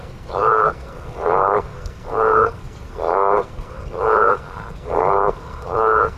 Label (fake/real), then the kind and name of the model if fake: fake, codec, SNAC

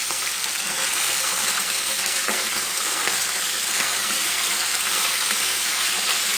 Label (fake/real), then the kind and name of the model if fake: fake, codec, SNAC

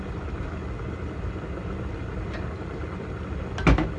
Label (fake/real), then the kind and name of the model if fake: real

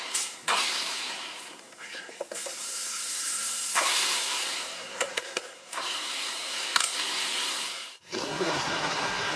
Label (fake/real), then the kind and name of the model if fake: fake, codec, SNAC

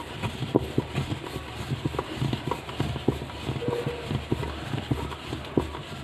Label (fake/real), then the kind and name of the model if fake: real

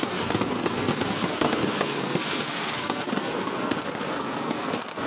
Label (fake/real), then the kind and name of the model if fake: fake, codec, SNAC